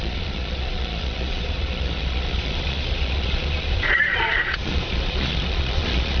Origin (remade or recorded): remade